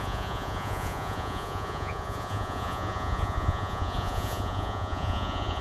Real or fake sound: fake